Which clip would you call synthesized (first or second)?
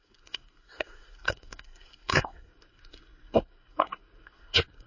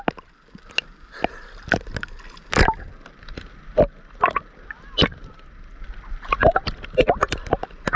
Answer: first